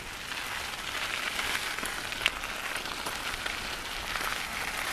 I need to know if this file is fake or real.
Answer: real